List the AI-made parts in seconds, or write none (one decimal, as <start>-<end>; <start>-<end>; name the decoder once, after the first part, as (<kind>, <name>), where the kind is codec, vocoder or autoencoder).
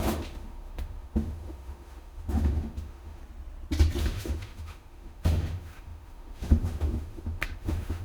0.0-3.2 (autoencoder, DAC-VAE); 4.0-8.0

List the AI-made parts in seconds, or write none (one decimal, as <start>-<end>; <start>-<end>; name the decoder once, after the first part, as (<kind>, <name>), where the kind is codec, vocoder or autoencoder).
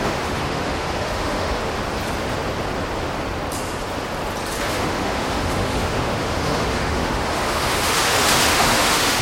0.0-1.6 (autoencoder, DAC-VAE); 4.6-9.2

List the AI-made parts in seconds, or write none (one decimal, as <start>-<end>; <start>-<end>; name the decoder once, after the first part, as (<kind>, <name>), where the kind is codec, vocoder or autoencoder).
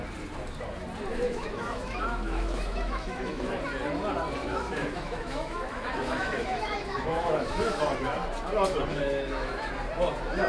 1.1-3.6 (autoencoder, DAC-VAE); 4.4-7.8; 8.9-9.7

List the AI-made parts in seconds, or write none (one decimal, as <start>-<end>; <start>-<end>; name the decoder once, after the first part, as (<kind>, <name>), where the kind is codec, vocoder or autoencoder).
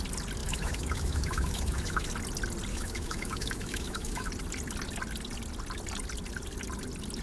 0.4-2.1 (autoencoder, DAC-VAE); 2.7-4.3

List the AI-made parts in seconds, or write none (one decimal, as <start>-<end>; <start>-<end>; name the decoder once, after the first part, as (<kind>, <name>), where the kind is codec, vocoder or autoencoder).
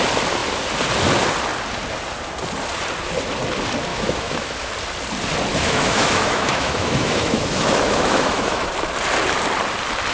3.9-4.7 (autoencoder, DAC-VAE); 5.5-8.7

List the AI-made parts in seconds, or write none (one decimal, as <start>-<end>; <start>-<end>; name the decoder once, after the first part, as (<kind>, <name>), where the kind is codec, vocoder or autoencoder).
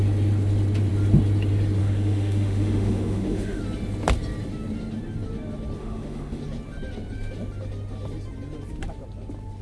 1.8-3.6 (autoencoder, DAC-VAE); 5.8-6.4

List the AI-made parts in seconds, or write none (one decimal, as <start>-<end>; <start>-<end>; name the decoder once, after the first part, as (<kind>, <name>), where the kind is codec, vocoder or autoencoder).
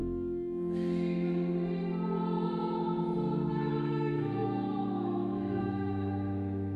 3.5-6.8 (autoencoder, DAC-VAE)